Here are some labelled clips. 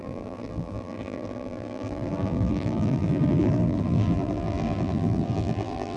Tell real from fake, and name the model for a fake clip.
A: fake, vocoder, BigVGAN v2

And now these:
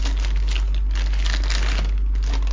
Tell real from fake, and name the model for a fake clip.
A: real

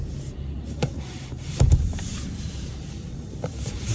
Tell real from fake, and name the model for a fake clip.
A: fake, vocoder, BigVGAN v2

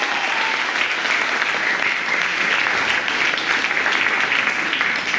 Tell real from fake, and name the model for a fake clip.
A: real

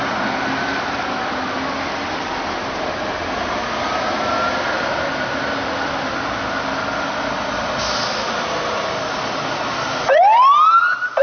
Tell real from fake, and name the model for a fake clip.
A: real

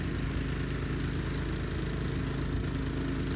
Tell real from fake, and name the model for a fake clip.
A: real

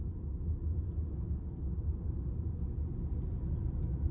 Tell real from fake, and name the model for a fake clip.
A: real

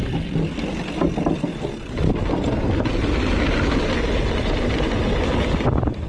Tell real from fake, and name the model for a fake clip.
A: real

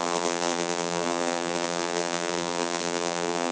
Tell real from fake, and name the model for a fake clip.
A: fake, vocoder, BigVGAN v2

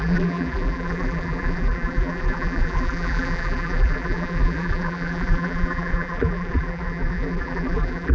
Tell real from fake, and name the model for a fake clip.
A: fake, vocoder, BigVGAN v2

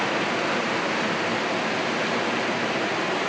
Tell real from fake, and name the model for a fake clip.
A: real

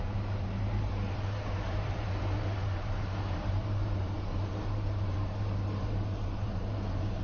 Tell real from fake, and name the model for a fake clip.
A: fake, vocoder, BigVGAN v2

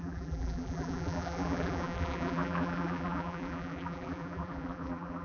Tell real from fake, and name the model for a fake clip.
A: fake, vocoder, BigVGAN v2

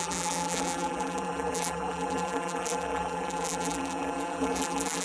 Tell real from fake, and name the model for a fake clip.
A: fake, vocoder, BigVGAN v2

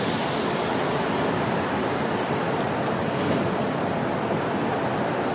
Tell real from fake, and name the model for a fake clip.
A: real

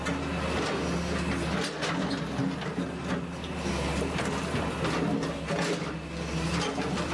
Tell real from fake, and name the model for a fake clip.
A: real